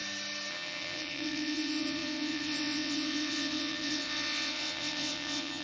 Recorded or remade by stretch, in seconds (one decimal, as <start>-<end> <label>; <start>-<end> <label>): 0.0-0.5 recorded; 0.5-5.6 remade